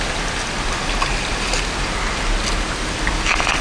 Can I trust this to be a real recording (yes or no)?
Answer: yes